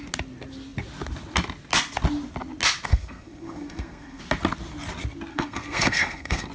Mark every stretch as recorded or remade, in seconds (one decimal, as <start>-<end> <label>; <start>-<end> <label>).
0.0-2.9 recorded; 2.9-4.2 remade; 4.2-5.3 recorded; 5.3-6.5 remade